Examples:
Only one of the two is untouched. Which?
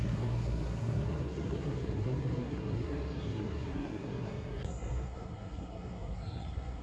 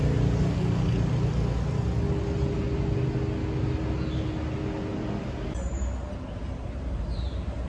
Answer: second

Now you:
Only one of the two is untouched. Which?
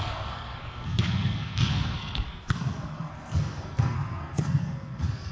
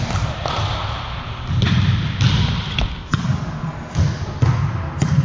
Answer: second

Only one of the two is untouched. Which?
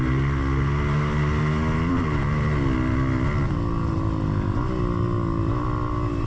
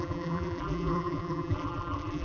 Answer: first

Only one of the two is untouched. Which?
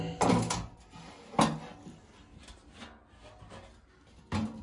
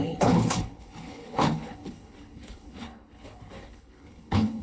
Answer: first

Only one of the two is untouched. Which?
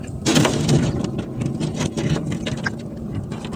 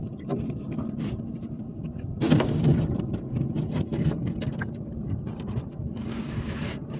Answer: first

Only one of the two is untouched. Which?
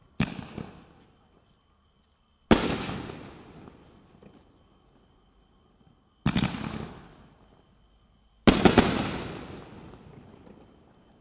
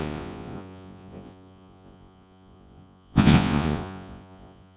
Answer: first